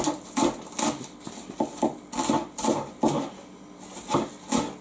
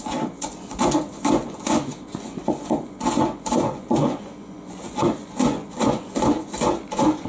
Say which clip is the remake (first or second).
second